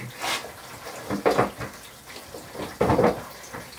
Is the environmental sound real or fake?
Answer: real